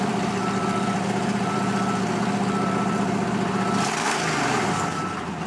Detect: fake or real fake